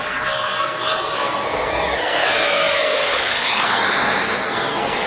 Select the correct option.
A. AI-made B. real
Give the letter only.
A